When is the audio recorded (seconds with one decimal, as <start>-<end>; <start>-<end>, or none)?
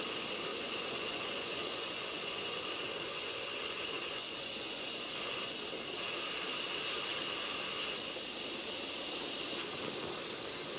0.0-0.5; 5.6-10.8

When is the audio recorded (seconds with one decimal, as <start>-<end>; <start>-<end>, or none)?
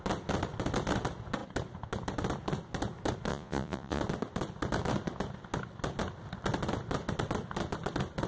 0.0-3.3; 4.0-8.3